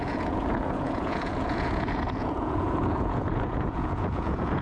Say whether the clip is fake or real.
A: fake